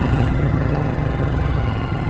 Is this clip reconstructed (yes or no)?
yes